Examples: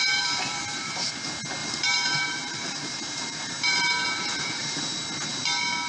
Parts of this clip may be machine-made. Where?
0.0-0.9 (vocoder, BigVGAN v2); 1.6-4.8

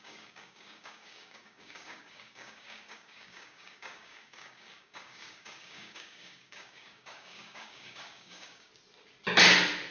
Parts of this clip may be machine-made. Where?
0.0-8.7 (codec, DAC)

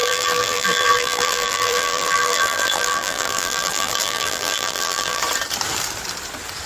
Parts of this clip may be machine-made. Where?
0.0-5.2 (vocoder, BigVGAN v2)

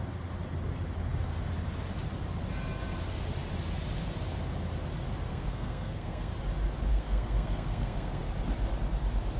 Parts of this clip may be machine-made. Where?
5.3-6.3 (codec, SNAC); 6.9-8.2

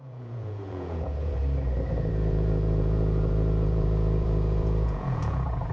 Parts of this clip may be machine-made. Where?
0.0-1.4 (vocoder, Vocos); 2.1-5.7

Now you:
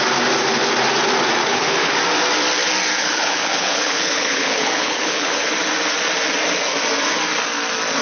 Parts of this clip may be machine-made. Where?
1.4-2.0 (codec, HILCodec); 3.0-5.5